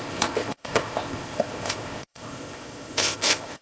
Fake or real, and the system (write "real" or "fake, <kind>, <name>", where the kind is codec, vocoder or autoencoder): fake, codec, ZipCodec